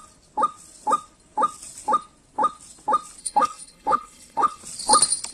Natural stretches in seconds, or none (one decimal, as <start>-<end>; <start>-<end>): 0.0-3.2; 4.6-5.3